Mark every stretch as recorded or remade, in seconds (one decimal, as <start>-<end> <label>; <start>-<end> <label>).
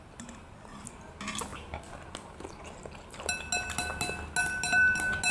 0.0-5.3 recorded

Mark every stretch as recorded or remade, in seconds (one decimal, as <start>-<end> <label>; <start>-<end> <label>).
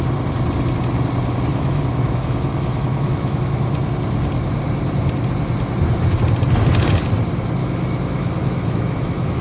0.0-1.5 recorded; 1.5-3.5 remade; 3.5-7.6 recorded; 7.6-9.4 remade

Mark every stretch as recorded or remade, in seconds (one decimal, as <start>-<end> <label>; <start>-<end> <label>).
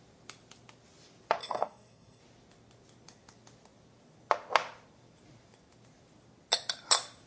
0.0-1.4 recorded; 1.4-2.2 remade; 2.2-7.3 recorded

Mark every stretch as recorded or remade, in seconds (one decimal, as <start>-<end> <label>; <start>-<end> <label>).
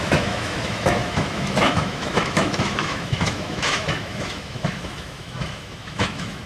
0.0-6.5 remade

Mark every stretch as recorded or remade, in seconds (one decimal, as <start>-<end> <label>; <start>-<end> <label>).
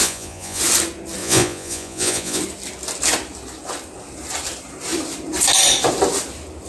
0.0-0.6 remade; 0.6-1.2 recorded; 1.2-2.4 remade; 2.4-6.7 recorded